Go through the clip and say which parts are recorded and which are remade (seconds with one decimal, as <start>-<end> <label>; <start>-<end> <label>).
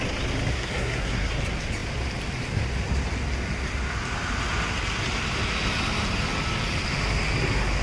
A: 0.0-0.5 recorded; 0.5-1.3 remade; 1.3-7.8 recorded